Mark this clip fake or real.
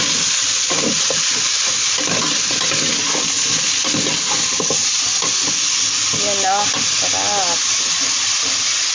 real